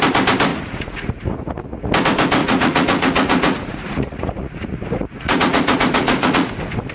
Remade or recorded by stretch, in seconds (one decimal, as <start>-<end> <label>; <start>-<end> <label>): 0.0-0.5 recorded; 0.5-1.9 remade; 1.9-2.4 recorded; 2.4-6.5 remade; 6.5-6.9 recorded